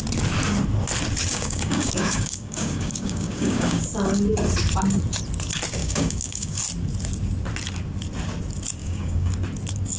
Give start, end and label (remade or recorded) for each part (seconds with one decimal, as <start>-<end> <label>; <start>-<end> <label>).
0.0-1.3 recorded; 1.3-3.8 remade; 3.8-5.8 recorded; 5.8-6.6 remade; 6.6-8.8 recorded; 8.8-9.3 remade; 9.3-10.0 recorded